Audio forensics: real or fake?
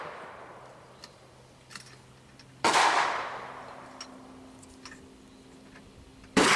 real